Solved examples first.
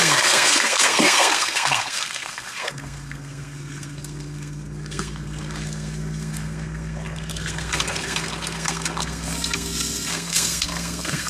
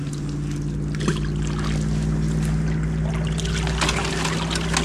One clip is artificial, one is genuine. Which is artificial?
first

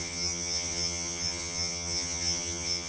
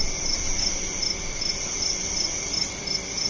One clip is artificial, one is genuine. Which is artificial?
first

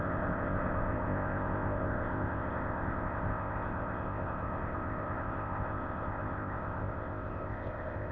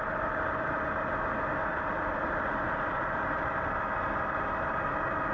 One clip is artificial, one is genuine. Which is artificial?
first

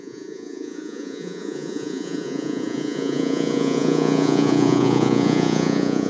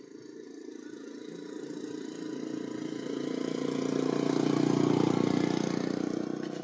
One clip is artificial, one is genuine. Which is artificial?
first